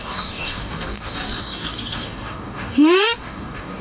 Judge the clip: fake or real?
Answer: fake